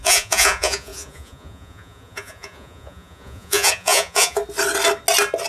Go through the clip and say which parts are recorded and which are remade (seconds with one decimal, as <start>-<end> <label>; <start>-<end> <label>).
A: 0.0-4.4 remade; 4.4-5.5 recorded

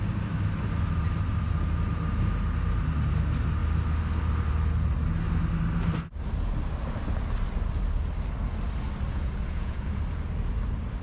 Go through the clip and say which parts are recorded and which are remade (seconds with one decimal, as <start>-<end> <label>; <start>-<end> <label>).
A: 0.0-9.1 recorded; 9.1-10.0 remade; 10.0-11.0 recorded

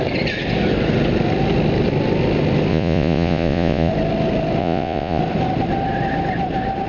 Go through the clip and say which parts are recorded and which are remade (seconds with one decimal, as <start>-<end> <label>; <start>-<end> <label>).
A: 0.0-2.7 recorded; 2.7-3.9 remade; 3.9-4.6 recorded; 4.6-5.2 remade; 5.2-6.9 recorded

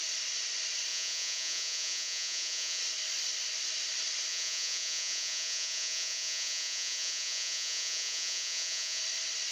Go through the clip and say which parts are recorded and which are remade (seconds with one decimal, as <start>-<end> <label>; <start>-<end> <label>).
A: 0.0-0.9 recorded; 0.9-2.8 remade; 2.8-4.3 recorded; 4.3-9.0 remade; 9.0-9.5 recorded

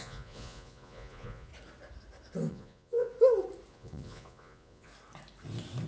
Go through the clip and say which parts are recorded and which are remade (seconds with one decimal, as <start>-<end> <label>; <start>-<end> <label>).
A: 0.0-1.5 remade; 1.5-2.5 recorded; 2.5-3.1 remade; 3.1-3.7 recorded; 3.7-4.9 remade; 4.9-5.9 recorded

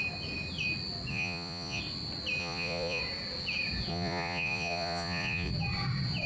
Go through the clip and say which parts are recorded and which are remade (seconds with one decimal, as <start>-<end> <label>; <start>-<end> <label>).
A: 0.0-1.1 recorded; 1.1-1.8 remade; 1.8-2.4 recorded; 2.4-3.0 remade; 3.0-3.9 recorded; 3.9-5.5 remade; 5.5-6.3 recorded

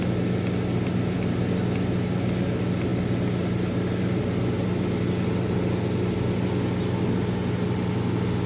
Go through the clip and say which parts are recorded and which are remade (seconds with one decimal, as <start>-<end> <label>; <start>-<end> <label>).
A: 0.0-8.5 recorded

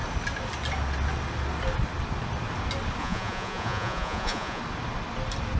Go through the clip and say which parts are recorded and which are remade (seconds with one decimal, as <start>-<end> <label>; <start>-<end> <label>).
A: 0.0-3.0 recorded; 3.0-4.6 remade; 4.6-5.6 recorded